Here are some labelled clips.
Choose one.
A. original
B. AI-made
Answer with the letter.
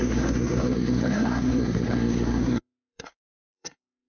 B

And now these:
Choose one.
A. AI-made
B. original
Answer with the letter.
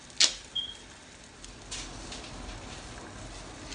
B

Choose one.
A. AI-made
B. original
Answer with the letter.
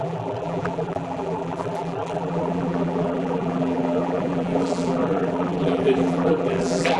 A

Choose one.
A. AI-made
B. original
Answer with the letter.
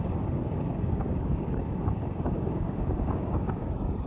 A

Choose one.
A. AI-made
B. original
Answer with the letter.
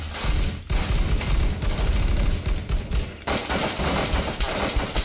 B